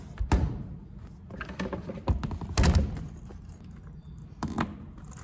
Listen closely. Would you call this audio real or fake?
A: real